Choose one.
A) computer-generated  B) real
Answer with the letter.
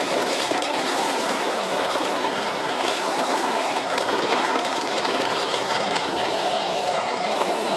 A